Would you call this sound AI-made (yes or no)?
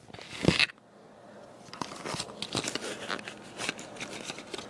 no